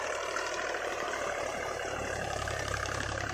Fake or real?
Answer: fake